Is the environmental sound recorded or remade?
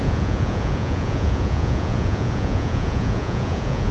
remade